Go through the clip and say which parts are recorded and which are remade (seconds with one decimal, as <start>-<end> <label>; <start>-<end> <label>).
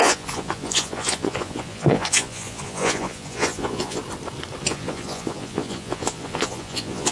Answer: 0.0-4.0 remade; 4.0-4.6 recorded; 4.6-7.1 remade